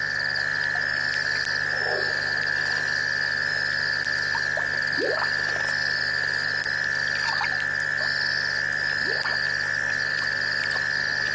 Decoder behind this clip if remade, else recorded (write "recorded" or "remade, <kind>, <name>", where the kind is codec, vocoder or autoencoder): recorded